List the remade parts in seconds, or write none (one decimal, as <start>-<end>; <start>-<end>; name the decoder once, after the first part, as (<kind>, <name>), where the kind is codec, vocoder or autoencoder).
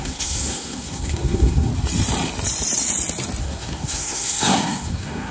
0.0-1.7 (codec, SNAC); 3.4-5.3